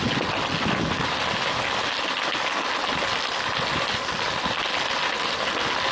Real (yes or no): yes